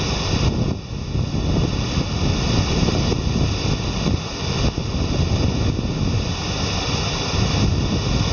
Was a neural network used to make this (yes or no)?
no